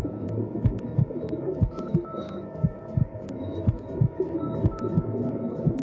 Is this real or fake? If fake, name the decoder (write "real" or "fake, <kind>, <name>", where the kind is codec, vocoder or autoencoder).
fake, codec, DAC